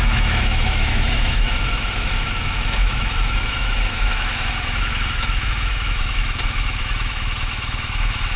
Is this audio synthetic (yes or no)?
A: yes